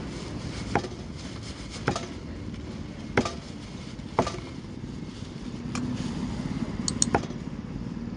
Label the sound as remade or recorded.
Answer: recorded